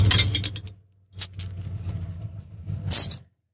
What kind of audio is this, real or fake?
real